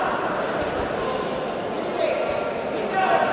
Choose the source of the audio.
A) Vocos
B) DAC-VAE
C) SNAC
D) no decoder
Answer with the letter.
D